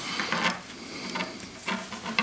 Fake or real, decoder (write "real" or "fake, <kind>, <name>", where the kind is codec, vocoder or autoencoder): real